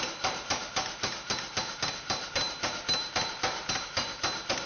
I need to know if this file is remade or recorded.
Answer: remade